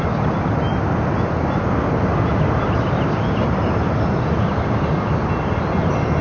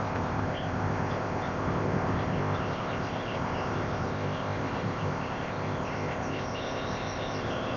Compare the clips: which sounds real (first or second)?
first